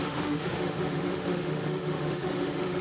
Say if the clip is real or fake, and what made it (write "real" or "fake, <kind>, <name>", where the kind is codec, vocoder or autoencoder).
fake, autoencoder, DAC-VAE